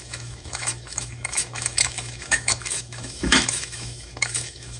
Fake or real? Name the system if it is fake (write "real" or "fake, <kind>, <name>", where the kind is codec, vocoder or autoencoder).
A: fake, autoencoder, DAC-VAE